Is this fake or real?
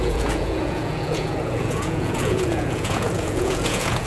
fake